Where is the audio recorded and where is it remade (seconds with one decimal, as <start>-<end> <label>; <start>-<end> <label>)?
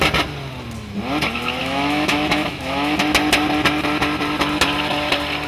0.0-1.6 recorded; 1.6-3.0 remade; 3.0-5.5 recorded